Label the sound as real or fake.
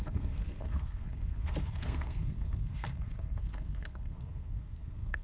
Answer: fake